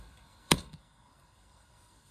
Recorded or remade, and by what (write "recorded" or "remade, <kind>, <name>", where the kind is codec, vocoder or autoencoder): remade, codec, SNAC